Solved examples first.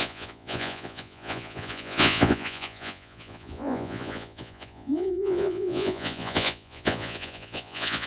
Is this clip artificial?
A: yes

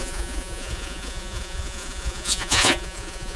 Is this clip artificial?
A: yes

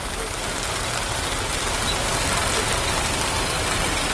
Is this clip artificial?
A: no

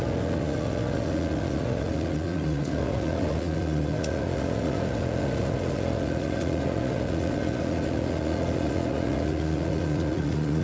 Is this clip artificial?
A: yes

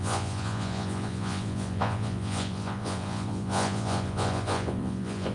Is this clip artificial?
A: yes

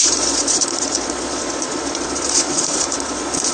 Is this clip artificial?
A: yes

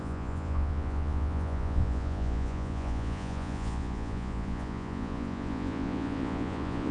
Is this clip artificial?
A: yes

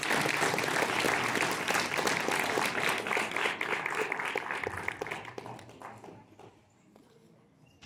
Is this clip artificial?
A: no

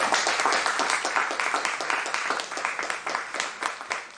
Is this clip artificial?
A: no